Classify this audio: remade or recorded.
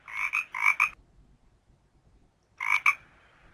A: recorded